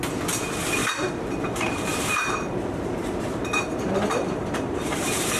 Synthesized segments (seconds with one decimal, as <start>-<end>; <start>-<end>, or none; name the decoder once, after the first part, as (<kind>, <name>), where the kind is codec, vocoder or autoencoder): 0.8-1.4 (vocoder, BigVGAN v2); 1.9-5.4